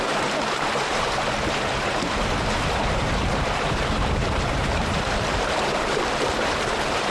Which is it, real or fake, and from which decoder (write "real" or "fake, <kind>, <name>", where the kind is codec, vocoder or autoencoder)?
fake, vocoder, BigVGAN v2